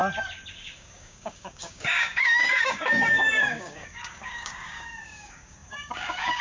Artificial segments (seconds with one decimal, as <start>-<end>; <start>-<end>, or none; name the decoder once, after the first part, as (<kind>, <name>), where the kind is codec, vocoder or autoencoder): 0.5-6.4 (codec, DAC)